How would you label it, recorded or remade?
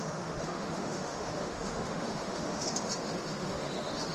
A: remade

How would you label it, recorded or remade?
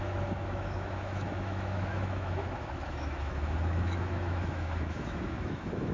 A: remade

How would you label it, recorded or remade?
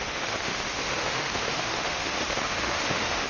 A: remade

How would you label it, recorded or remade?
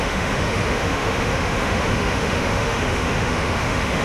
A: remade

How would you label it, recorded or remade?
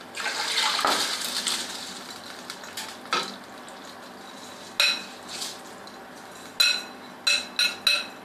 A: recorded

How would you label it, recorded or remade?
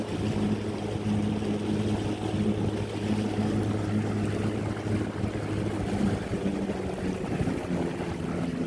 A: recorded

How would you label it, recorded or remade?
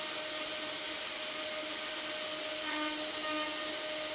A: recorded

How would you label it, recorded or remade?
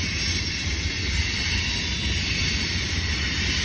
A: recorded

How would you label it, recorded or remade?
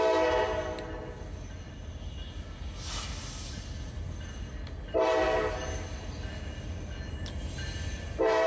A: recorded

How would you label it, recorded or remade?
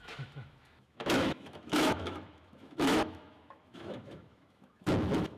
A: remade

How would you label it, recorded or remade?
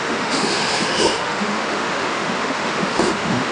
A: remade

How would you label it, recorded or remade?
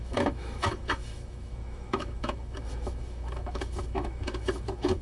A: remade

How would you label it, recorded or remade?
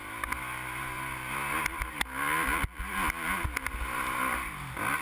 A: recorded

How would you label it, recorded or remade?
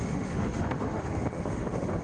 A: remade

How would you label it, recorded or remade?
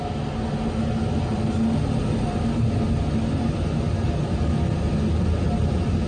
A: recorded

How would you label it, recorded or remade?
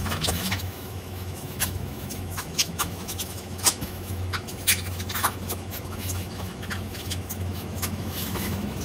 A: remade